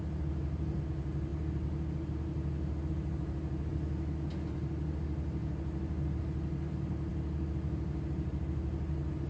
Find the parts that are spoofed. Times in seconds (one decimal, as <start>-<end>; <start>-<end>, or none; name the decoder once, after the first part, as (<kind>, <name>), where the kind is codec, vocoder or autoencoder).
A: none